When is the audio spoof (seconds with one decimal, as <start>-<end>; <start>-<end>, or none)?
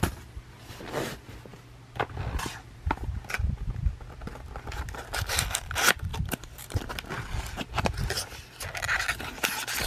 6.1-6.8